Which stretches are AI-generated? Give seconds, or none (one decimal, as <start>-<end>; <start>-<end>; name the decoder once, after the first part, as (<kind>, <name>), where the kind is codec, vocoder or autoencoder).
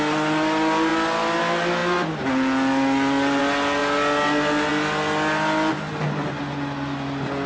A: none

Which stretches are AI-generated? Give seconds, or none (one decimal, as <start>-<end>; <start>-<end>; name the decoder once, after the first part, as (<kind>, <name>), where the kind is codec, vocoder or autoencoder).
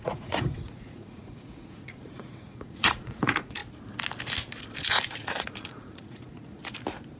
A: 0.0-3.6 (vocoder, Vocos); 4.8-6.6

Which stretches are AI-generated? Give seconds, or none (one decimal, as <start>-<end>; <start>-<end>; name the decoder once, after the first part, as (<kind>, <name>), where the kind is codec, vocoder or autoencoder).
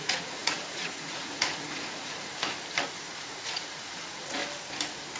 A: 0.0-2.3 (vocoder, Vocos); 3.1-4.4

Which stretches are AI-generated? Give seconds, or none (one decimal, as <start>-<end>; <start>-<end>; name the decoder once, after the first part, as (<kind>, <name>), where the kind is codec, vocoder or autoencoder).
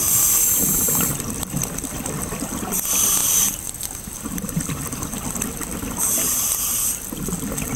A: 3.2-4.0 (vocoder, BigVGAN v2)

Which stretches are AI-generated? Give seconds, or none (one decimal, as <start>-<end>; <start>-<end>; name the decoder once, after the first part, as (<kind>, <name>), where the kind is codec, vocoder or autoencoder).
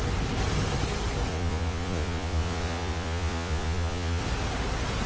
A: 1.3-4.2 (vocoder, Vocos)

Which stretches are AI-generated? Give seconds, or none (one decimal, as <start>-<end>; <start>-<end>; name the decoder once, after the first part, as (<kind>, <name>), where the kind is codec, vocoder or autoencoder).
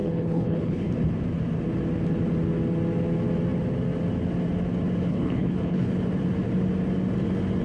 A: 0.0-0.9 (codec, HILCodec); 5.1-5.9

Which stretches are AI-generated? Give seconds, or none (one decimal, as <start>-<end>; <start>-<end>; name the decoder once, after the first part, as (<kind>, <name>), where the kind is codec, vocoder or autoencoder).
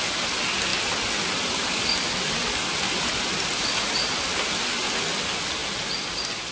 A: 0.7-4.6 (vocoder, BigVGAN v2); 5.6-6.5